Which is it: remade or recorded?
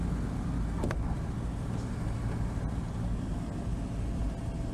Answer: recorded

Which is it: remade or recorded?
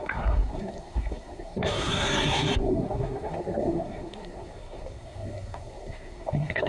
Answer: remade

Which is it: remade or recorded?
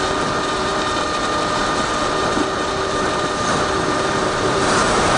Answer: remade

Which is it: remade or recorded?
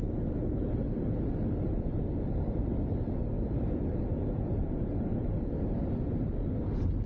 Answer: recorded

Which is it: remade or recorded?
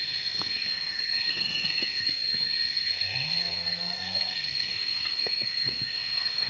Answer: remade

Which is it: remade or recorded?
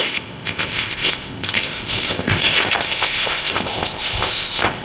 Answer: remade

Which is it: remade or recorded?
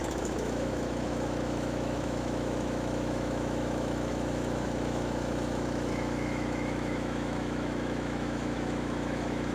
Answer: remade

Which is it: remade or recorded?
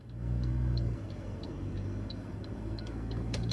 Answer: remade